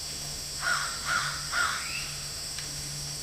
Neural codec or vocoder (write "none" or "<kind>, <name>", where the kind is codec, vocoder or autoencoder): autoencoder, DAC-VAE